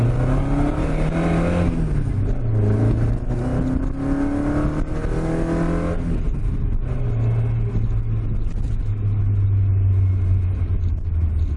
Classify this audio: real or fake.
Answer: real